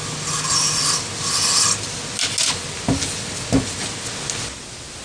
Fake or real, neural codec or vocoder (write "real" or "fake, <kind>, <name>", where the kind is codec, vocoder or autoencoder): real